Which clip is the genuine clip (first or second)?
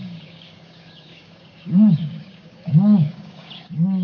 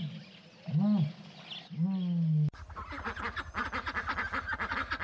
second